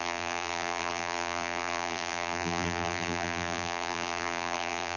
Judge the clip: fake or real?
fake